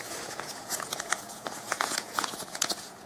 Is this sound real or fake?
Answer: fake